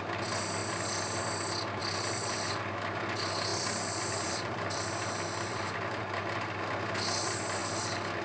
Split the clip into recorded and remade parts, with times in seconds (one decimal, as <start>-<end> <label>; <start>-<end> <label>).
0.0-1.8 recorded; 1.8-2.5 remade; 2.5-3.5 recorded; 3.5-6.0 remade; 6.0-8.2 recorded